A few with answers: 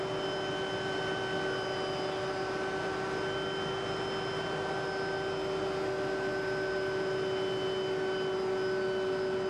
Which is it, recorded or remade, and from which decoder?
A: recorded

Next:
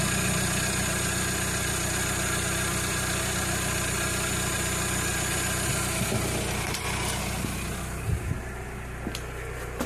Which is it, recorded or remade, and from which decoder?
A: recorded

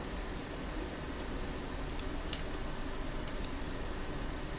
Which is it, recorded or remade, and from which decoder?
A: recorded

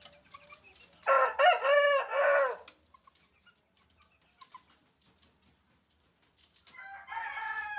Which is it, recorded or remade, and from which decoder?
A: recorded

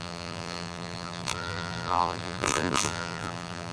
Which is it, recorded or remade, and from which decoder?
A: remade, vocoder, BigVGAN v2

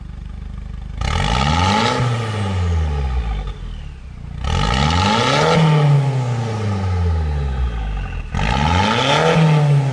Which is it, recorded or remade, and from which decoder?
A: recorded